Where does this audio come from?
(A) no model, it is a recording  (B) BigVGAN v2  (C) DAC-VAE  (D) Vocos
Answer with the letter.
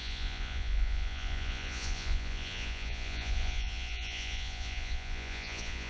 D